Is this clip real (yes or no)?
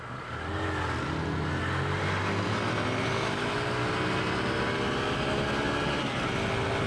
yes